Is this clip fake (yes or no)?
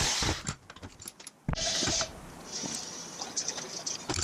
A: yes